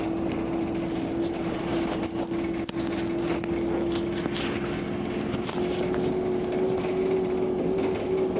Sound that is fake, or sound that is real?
real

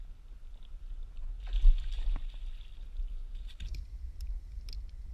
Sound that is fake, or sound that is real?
real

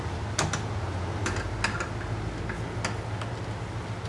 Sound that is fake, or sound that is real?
real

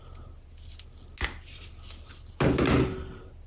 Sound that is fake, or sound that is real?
real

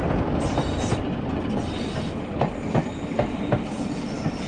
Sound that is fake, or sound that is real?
real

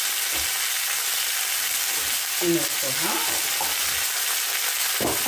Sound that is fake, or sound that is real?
real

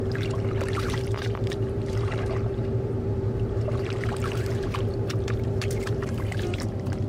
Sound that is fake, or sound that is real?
fake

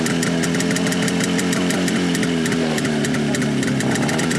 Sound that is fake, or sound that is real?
fake